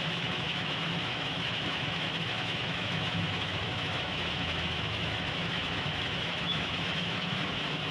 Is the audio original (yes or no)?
no